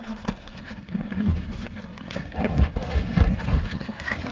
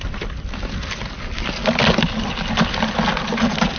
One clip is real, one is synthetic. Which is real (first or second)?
second